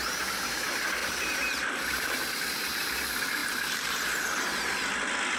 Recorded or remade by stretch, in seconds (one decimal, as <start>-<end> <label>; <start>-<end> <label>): 0.0-1.0 recorded; 1.0-2.2 remade; 2.2-3.4 recorded; 3.4-4.8 remade; 4.8-5.4 recorded